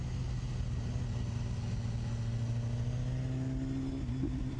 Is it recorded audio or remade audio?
recorded